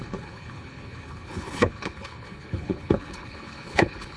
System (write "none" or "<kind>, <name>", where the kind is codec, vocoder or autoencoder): codec, HILCodec